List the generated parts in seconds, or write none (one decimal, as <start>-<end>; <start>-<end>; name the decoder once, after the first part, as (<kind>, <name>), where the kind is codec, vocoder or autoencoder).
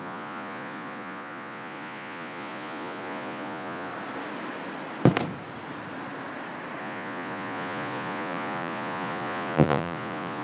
0.0-3.9 (vocoder, Vocos); 6.8-10.4